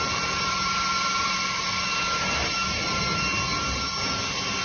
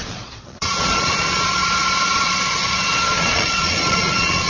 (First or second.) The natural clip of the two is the first